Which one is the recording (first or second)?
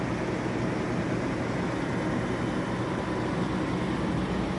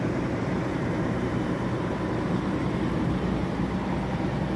first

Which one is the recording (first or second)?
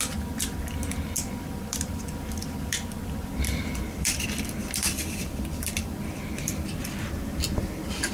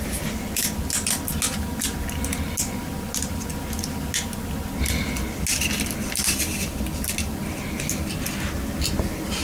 second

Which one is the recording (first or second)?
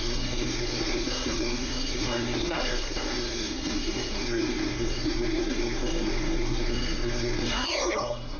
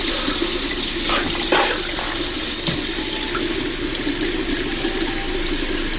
second